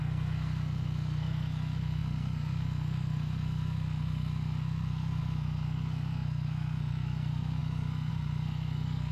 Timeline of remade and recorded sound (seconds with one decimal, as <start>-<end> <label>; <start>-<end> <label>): 0.0-9.1 remade